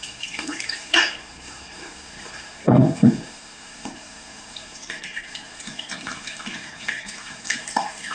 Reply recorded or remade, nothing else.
remade